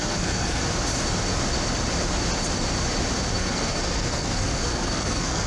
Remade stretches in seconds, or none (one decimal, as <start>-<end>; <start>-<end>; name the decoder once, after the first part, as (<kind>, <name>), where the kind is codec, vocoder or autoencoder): 0.0-0.6 (codec, SNAC); 3.4-5.5